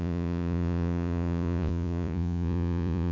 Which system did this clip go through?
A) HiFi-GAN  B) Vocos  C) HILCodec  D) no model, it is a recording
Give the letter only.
B